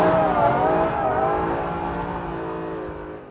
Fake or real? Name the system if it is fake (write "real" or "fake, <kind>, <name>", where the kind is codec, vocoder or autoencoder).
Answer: real